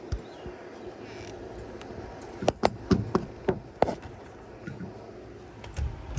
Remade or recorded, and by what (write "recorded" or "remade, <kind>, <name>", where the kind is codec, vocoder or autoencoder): recorded